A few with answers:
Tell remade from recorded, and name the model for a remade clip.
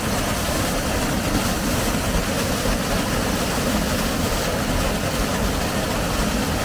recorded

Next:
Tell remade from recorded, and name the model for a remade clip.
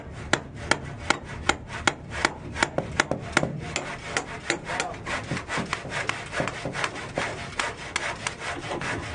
recorded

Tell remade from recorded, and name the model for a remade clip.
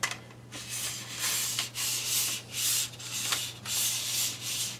recorded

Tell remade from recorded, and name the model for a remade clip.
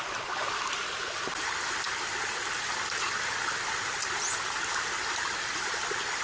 recorded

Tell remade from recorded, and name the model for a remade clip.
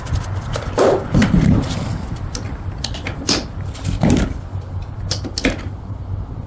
recorded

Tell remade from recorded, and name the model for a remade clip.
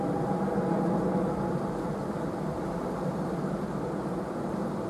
recorded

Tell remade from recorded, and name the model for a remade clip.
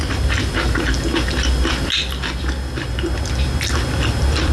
recorded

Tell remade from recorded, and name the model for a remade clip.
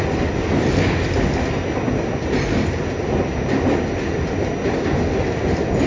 recorded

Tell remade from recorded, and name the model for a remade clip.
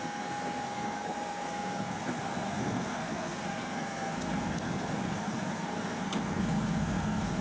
remade, codec, SNAC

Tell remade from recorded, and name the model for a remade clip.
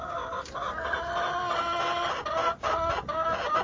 recorded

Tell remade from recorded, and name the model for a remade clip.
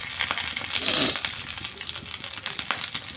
recorded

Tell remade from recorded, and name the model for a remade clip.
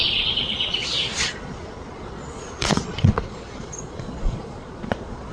remade, vocoder, Vocos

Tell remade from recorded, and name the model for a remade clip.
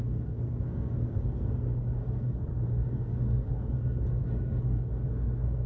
remade, codec, SNAC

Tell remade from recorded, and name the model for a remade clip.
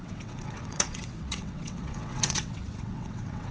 remade, vocoder, WaveNeXt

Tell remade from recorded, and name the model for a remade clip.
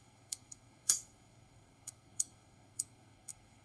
remade, codec, SNAC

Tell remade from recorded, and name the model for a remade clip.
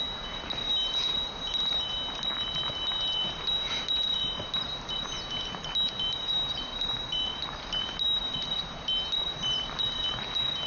recorded